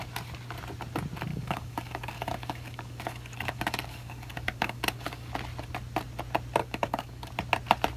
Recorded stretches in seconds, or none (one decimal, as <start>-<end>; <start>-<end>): 0.0-1.3; 5.3-6.6; 7.3-8.0